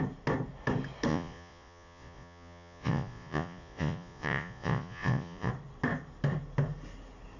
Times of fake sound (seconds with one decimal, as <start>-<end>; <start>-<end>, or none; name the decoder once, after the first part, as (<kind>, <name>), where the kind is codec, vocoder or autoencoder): 1.1-5.5 (vocoder, Vocos)